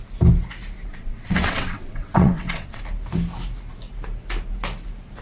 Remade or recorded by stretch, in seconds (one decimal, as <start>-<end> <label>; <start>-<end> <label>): 0.0-0.9 recorded; 0.9-2.8 remade; 2.8-5.2 recorded